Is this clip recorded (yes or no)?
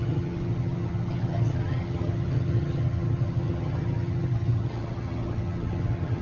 no